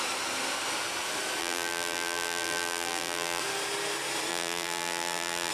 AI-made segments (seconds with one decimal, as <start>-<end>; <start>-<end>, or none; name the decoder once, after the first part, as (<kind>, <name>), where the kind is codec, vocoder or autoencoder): 1.4-3.4 (vocoder, BigVGAN v2); 4.3-5.5